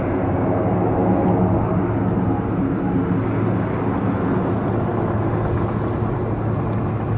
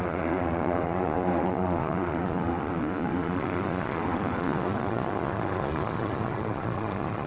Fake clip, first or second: second